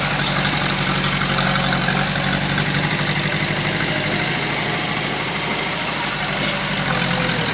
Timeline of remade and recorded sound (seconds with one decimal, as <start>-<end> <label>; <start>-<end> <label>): 0.0-7.5 recorded